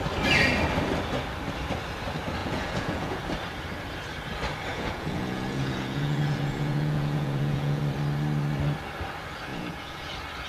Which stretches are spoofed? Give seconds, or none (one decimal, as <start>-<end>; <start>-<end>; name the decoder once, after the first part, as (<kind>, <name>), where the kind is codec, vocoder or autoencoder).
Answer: 2.4-3.2 (vocoder, Vocos); 4.7-7.8; 9.5-10.1